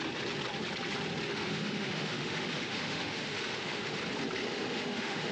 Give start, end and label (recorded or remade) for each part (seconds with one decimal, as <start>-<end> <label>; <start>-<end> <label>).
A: 0.0-1.3 recorded; 1.3-4.0 remade; 4.0-4.4 recorded; 4.4-5.3 remade